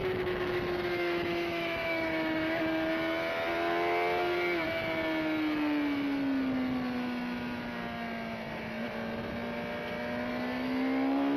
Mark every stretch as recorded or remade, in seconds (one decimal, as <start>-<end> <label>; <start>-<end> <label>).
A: 0.0-2.6 remade; 2.6-11.4 recorded